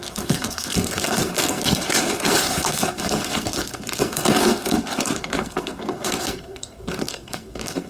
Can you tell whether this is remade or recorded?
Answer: remade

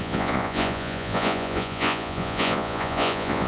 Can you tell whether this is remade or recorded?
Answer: remade